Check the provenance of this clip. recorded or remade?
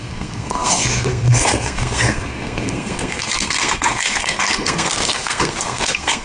remade